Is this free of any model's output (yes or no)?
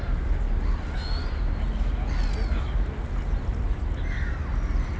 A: yes